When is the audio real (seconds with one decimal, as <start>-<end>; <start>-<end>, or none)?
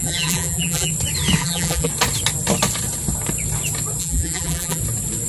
0.9-1.4; 1.9-4.0; 4.8-5.3